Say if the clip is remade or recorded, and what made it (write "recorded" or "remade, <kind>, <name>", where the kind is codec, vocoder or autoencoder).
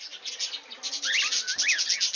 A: recorded